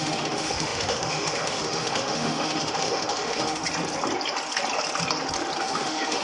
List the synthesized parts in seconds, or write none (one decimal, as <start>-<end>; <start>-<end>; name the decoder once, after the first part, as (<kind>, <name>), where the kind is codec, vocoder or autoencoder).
0.0-3.6 (autoencoder, DAC-VAE); 5.6-6.2